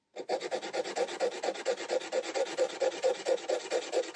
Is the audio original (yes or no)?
yes